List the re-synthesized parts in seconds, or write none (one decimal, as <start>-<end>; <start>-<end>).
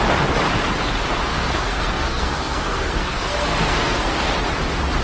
1.3-4.3